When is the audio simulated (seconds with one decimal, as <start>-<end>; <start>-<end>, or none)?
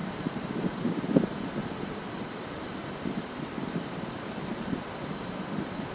0.0-0.5; 1.6-2.4